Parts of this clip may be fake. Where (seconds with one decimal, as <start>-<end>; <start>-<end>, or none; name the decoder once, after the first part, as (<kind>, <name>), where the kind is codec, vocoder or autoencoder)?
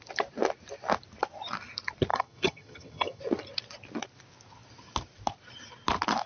2.1-3.2 (vocoder, HiFi-GAN)